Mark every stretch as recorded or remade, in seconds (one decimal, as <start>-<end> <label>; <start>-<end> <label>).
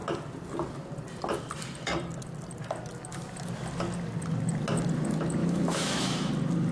0.0-5.4 recorded; 5.4-6.3 remade; 6.3-6.7 recorded